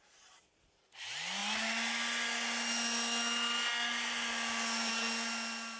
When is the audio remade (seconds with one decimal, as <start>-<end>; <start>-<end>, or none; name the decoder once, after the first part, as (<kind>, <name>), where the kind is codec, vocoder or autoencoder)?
none